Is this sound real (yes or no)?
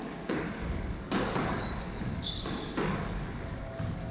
no